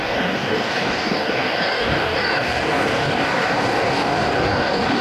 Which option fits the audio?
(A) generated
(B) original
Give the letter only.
A